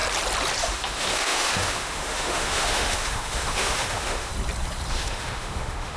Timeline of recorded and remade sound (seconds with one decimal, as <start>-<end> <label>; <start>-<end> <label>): 0.0-0.6 recorded; 0.6-4.3 remade; 4.3-4.9 recorded; 4.9-6.0 remade